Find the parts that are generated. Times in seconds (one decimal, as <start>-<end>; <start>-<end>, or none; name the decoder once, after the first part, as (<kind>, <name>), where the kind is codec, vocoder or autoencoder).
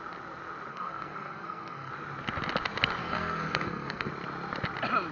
0.7-1.9 (codec, SNAC); 3.0-4.1